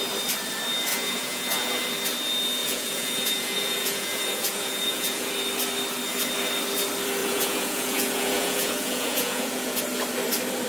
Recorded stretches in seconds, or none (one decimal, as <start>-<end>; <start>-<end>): 0.0-0.9; 1.8-2.6; 5.3-7.2; 9.8-10.7